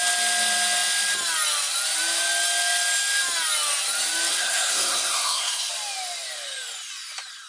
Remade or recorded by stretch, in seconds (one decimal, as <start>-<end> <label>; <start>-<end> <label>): 0.0-4.3 recorded; 4.3-5.7 remade; 5.7-7.5 recorded